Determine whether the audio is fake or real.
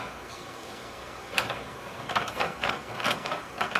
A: fake